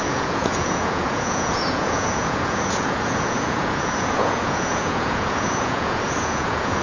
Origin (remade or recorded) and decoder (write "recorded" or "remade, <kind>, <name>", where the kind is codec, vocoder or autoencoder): remade, vocoder, Vocos